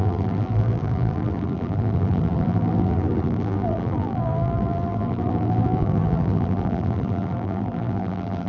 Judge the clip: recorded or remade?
remade